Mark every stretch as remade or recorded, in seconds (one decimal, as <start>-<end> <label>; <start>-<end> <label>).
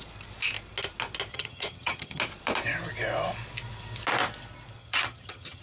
0.0-1.3 recorded; 1.3-2.2 remade; 2.2-4.8 recorded; 4.8-5.6 remade